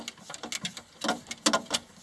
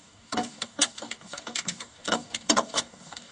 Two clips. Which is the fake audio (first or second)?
second